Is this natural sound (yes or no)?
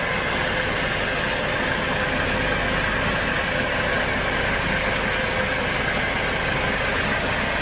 yes